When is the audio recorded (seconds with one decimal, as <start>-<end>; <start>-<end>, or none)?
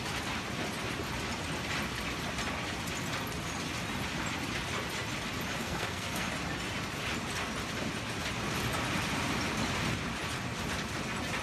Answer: 0.0-5.6; 6.3-11.4